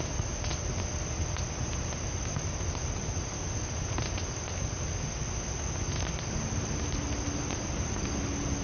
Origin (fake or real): real